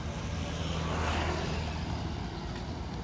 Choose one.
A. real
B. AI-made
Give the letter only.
A